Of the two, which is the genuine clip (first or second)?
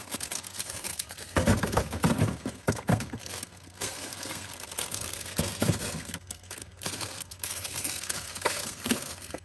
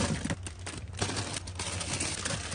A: second